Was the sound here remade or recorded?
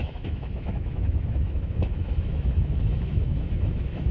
remade